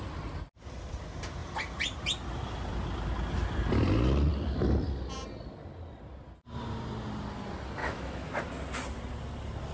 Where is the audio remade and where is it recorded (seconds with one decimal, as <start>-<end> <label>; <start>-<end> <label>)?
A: 0.0-7.8 recorded; 7.8-8.4 remade; 8.4-9.7 recorded